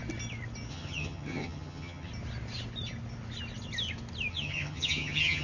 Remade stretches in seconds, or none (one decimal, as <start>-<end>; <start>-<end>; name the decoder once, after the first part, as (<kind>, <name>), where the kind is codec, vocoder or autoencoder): 0.7-2.1 (vocoder, HiFi-GAN); 4.3-5.4